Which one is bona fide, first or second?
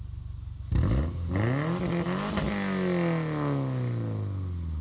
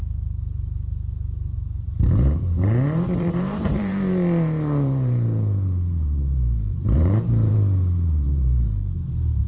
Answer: first